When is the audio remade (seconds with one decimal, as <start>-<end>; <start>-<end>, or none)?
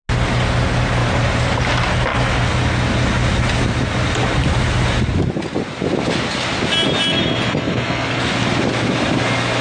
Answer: 1.0-1.7